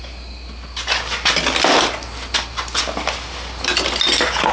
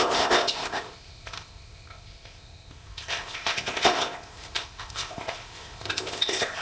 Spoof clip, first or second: second